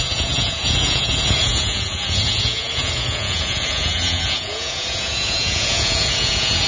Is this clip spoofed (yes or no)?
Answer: yes